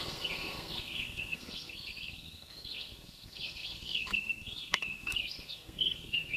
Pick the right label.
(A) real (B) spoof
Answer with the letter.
B